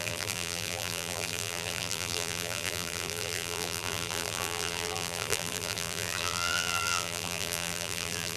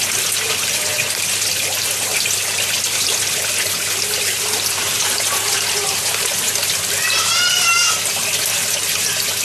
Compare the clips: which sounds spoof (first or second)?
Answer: first